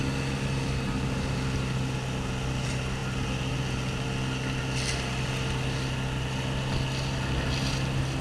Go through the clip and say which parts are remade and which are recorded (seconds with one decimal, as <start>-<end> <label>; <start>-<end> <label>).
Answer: 0.0-8.2 recorded